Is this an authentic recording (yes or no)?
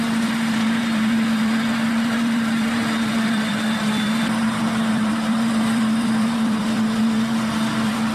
no